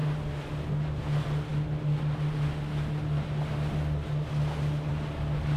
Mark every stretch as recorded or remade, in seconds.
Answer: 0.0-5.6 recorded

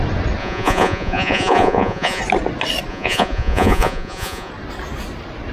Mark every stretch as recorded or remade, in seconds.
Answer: 0.0-0.4 recorded; 0.4-2.2 remade; 2.2-2.9 recorded; 2.9-4.5 remade; 4.5-5.5 recorded

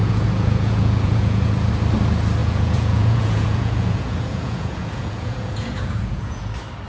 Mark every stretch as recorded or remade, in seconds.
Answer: 0.0-1.7 remade; 1.7-2.4 recorded; 2.4-6.5 remade; 6.5-6.9 recorded

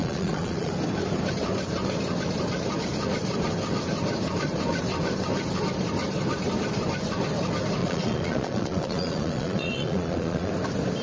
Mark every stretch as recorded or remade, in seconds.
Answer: 0.0-0.7 remade; 0.7-7.8 recorded; 7.8-10.5 remade; 10.5-11.0 recorded

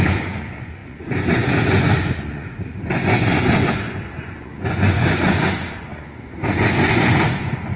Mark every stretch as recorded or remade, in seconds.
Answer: 0.0-7.8 remade

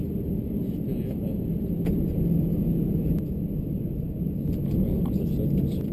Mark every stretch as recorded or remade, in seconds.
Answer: 0.0-5.9 recorded